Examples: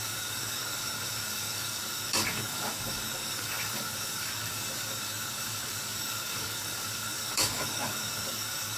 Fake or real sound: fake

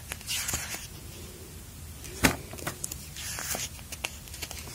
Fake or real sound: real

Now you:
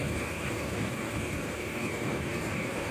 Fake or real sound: fake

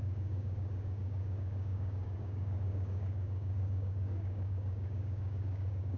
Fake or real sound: fake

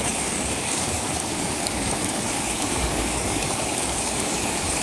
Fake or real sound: fake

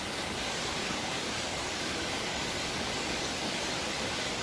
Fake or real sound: fake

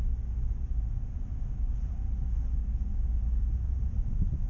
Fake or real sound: real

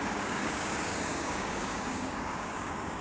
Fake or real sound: fake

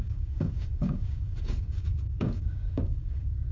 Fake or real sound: fake